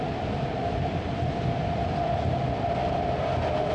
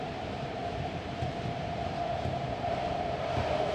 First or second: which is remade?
second